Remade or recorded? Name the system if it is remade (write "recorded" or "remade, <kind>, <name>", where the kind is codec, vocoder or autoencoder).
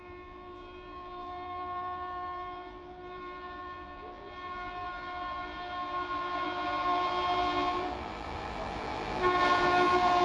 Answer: remade, vocoder, BigVGAN v2